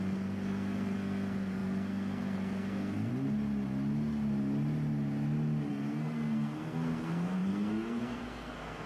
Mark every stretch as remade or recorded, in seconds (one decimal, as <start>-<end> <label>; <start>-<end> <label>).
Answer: 0.0-3.1 remade; 3.1-5.7 recorded; 5.7-8.9 remade